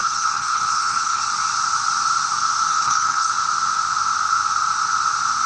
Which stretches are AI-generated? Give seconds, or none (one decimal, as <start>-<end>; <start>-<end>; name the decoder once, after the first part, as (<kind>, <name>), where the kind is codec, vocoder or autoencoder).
0.0-1.2 (codec, HILCodec); 2.7-3.3